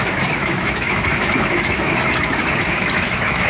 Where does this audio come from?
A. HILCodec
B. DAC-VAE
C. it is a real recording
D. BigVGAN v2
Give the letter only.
B